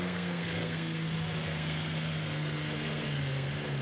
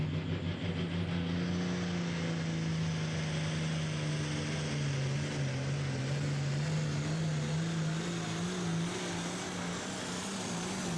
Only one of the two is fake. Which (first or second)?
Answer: first